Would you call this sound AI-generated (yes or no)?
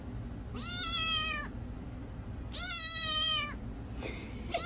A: no